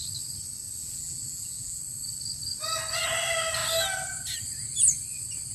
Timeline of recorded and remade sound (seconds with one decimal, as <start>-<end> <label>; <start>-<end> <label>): 0.0-0.8 recorded; 0.8-1.8 remade; 1.8-5.5 recorded